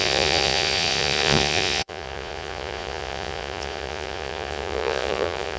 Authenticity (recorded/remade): remade